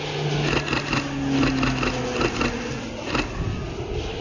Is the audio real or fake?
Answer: real